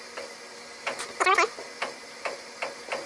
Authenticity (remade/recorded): recorded